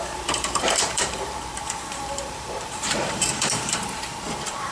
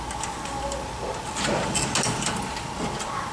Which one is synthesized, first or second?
first